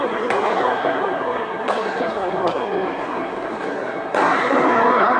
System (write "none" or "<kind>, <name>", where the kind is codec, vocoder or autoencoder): codec, SNAC